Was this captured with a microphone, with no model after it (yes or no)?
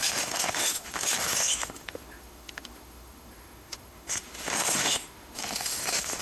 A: no